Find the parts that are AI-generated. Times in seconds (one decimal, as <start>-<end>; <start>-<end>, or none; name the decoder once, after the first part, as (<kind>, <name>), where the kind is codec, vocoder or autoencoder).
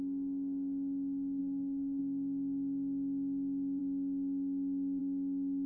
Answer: 1.4-2.0 (codec, SNAC)